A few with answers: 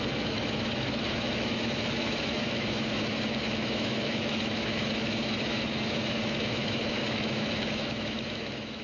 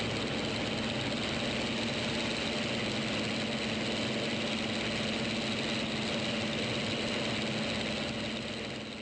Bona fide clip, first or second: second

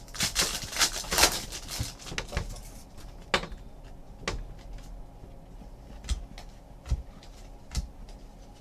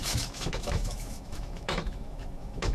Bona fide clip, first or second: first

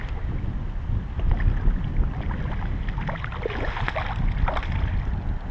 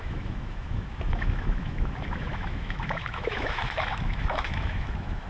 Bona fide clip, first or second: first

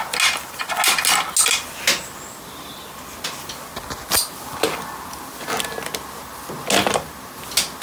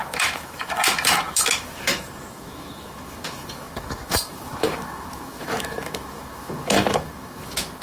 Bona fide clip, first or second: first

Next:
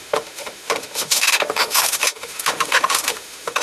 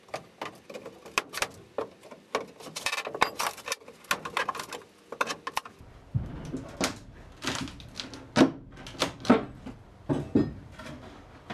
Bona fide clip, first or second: second